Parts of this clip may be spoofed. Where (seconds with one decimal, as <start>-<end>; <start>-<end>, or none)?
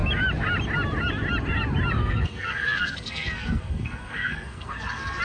2.0-5.2